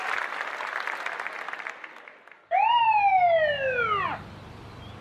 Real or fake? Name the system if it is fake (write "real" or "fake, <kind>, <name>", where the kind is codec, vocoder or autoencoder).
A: real